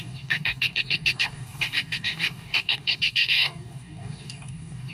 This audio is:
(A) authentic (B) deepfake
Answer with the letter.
B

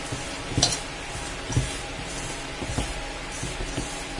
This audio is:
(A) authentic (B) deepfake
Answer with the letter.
A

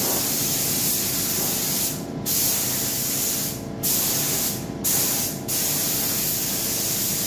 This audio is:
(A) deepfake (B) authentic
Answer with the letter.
B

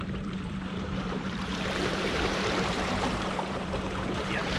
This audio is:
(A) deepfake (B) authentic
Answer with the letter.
A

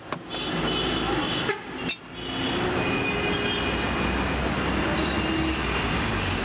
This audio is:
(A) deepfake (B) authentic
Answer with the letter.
B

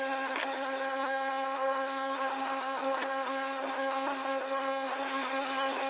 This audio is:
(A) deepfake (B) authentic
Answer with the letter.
A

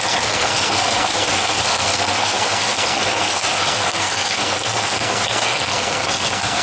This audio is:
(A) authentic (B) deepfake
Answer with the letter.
B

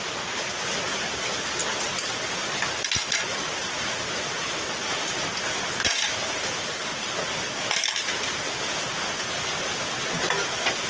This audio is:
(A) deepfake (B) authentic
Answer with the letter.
B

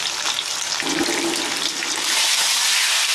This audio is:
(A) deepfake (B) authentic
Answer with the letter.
B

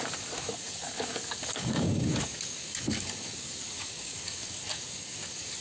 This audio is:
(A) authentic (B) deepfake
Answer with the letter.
B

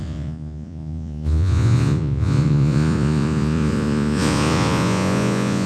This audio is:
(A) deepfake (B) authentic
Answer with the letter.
A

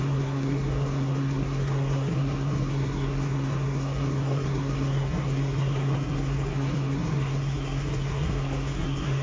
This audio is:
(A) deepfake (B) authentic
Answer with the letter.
A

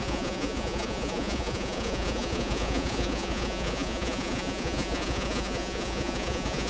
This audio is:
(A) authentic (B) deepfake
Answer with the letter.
B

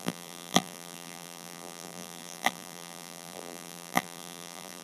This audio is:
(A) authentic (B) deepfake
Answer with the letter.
B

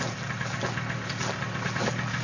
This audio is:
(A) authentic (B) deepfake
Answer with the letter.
A